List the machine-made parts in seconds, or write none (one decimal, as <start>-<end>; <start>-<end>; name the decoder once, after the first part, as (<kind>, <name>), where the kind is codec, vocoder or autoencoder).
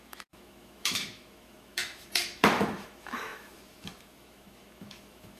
0.0-5.4 (autoencoder, DAC-VAE)